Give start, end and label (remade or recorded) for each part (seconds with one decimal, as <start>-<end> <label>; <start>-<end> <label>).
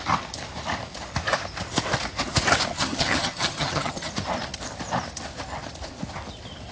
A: 0.0-2.7 recorded; 2.7-4.1 remade; 4.1-6.7 recorded